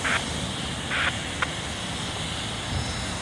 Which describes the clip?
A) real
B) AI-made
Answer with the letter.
A